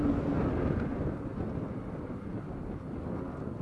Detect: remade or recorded recorded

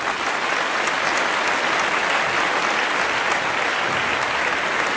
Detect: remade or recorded recorded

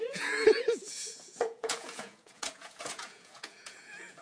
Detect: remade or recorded remade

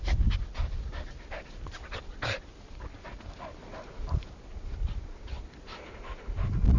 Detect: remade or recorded recorded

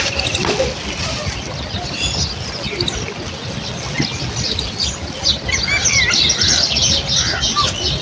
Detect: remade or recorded recorded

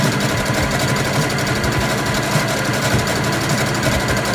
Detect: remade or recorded recorded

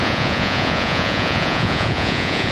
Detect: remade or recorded remade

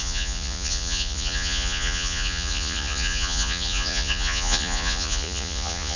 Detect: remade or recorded remade